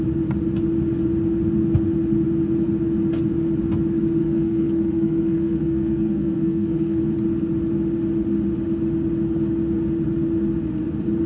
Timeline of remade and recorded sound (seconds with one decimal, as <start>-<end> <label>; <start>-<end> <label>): 0.0-4.2 recorded; 4.2-7.0 remade; 7.0-11.3 recorded